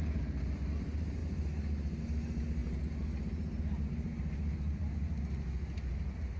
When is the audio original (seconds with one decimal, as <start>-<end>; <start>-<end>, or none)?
0.0-6.4